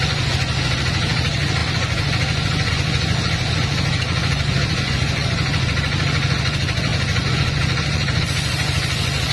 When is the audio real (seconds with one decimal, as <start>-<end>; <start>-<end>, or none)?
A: none